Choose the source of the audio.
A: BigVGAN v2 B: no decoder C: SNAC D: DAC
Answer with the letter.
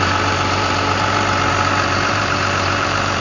A